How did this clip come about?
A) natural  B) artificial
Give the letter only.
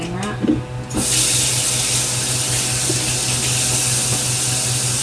A